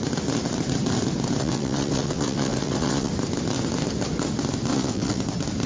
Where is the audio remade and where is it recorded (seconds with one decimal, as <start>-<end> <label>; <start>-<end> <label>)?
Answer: 0.0-1.4 recorded; 1.4-3.1 remade; 3.1-4.7 recorded; 4.7-5.2 remade; 5.2-5.7 recorded